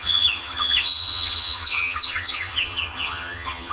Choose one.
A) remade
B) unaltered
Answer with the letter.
A